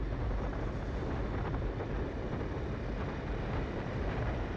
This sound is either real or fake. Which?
real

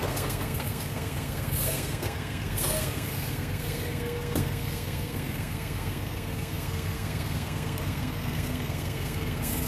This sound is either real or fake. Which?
fake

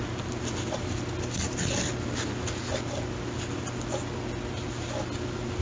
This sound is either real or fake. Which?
real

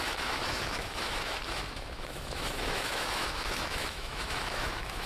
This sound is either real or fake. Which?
fake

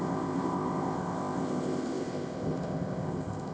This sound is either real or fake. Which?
fake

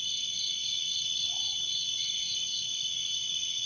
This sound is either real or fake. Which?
fake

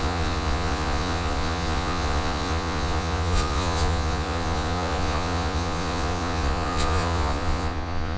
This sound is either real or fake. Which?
fake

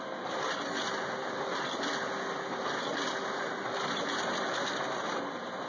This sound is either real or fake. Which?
real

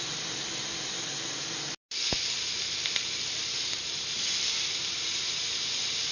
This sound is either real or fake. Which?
real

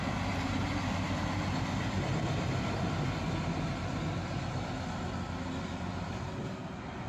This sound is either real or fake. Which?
real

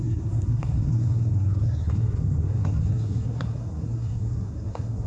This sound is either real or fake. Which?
fake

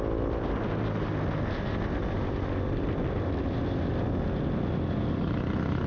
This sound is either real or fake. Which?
real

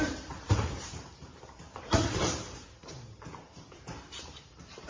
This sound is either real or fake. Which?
fake